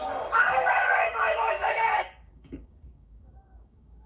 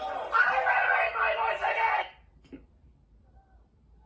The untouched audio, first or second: second